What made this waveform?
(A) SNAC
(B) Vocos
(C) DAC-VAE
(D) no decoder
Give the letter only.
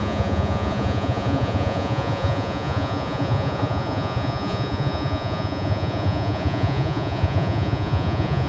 B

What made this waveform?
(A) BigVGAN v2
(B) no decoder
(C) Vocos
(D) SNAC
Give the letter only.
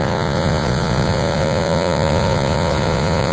C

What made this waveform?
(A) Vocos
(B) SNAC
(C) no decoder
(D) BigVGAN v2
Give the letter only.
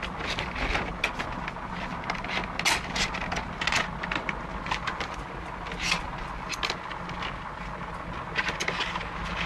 C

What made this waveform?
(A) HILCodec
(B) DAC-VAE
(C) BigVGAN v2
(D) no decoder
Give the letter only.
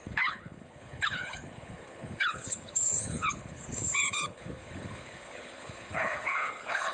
A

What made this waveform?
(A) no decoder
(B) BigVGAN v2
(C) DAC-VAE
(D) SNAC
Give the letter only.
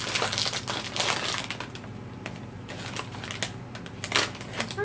A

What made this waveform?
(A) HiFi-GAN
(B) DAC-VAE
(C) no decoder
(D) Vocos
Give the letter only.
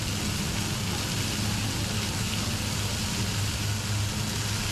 C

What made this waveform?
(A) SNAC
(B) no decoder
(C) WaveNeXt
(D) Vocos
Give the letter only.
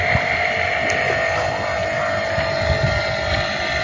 B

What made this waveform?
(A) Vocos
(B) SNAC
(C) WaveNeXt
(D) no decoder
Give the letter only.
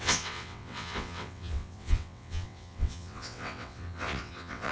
C